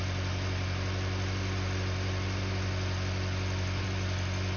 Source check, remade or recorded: recorded